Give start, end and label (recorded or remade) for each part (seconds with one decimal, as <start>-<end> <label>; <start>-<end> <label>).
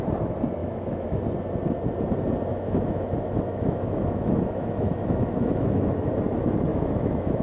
0.0-0.6 recorded; 0.6-1.2 remade; 1.2-2.5 recorded; 2.5-6.1 remade; 6.1-6.7 recorded; 6.7-7.4 remade